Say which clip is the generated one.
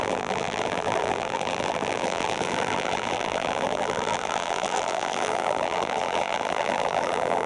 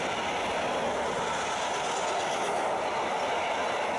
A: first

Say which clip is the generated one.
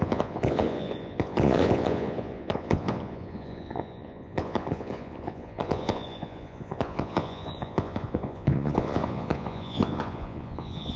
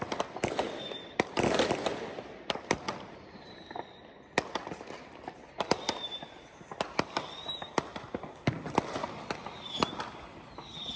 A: first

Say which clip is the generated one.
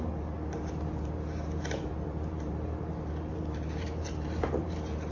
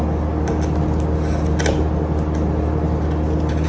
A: first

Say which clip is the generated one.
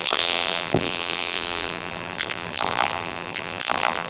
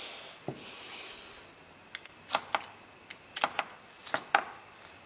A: first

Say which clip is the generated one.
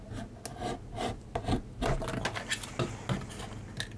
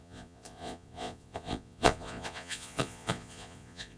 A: second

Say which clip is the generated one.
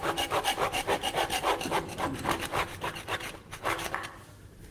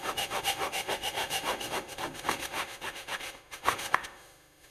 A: second